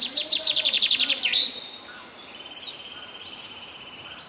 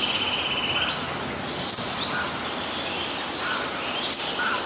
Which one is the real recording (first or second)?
second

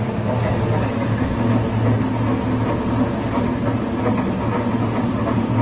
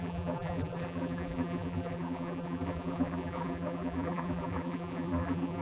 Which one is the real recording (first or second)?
first